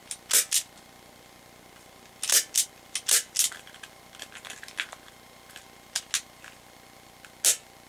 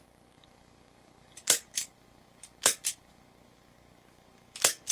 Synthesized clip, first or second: second